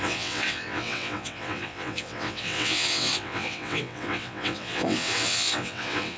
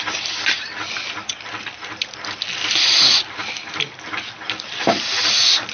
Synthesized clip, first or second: first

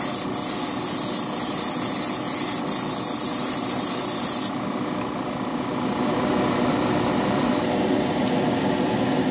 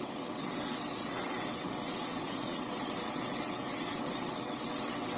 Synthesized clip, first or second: second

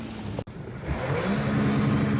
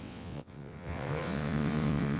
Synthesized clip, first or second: second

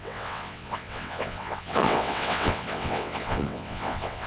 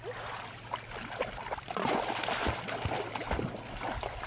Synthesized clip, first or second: first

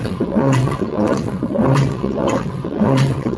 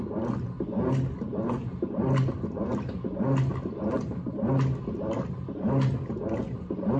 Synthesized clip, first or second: first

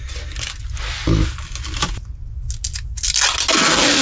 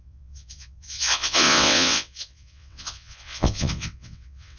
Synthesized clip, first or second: second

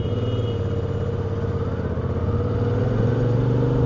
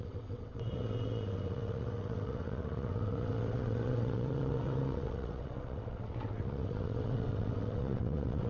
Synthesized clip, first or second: second